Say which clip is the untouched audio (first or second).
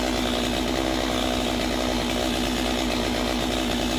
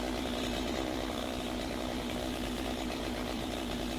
first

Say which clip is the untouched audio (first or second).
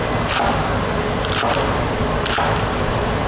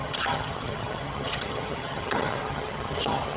first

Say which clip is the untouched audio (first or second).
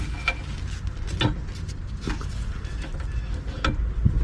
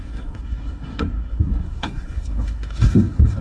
first